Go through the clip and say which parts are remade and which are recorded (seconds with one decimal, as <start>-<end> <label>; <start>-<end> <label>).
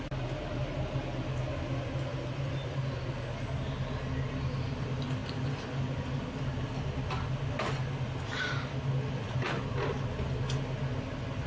0.0-11.5 recorded